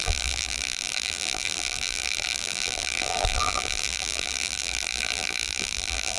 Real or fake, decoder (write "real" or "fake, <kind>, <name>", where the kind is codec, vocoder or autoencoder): fake, vocoder, BigVGAN v2